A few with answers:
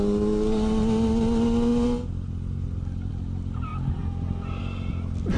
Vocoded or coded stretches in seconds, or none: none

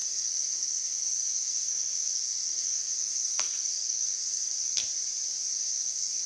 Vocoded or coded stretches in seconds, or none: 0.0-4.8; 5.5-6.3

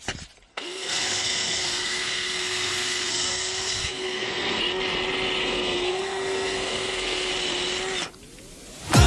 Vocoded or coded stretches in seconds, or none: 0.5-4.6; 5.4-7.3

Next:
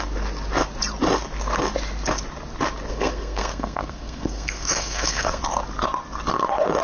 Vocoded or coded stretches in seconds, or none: 2.9-5.4

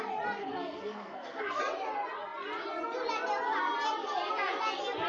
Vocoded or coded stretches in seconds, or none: 0.4-1.6

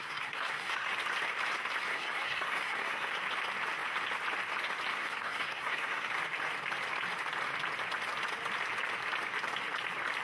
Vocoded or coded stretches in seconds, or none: 0.0-0.9; 1.9-3.1; 4.9-6.1

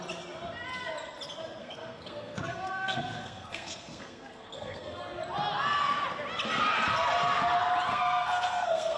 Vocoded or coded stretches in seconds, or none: 1.6-5.0; 7.9-9.0